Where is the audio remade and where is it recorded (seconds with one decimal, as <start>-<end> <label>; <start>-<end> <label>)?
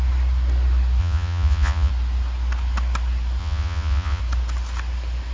0.0-1.0 recorded; 1.0-1.9 remade; 1.9-3.4 recorded; 3.4-4.2 remade; 4.2-5.3 recorded